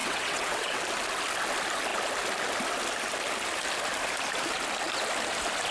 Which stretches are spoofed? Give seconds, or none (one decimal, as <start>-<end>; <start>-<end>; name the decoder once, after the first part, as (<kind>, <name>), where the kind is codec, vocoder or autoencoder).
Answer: 0.0-0.8 (vocoder, WaveNeXt)